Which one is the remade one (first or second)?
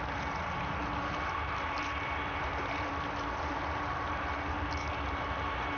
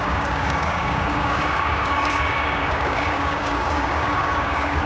second